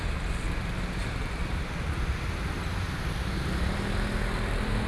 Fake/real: real